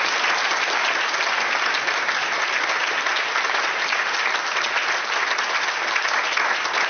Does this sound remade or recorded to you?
recorded